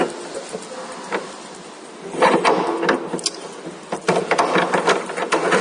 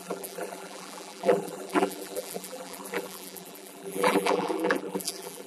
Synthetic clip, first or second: second